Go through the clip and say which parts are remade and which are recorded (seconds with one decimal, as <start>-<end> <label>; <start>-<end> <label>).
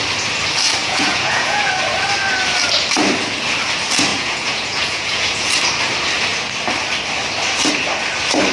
0.0-0.8 recorded; 0.8-1.7 remade; 1.7-4.1 recorded; 4.1-5.5 remade; 5.5-8.5 recorded